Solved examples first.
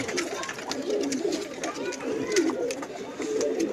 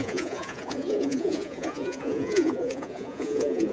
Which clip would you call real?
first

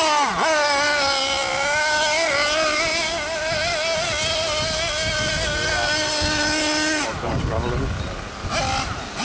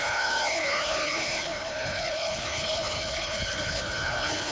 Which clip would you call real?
first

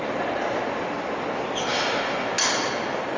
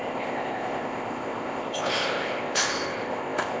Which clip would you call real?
first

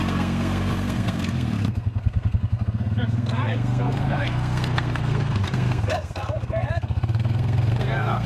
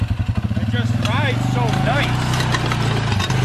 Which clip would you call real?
second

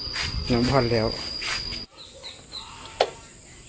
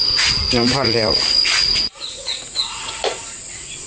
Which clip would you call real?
first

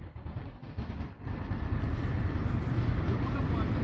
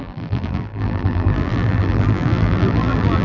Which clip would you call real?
first